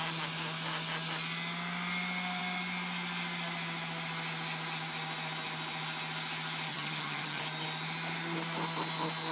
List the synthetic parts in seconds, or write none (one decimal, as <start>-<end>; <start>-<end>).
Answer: 6.7-7.4